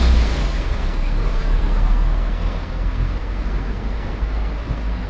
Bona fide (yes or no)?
no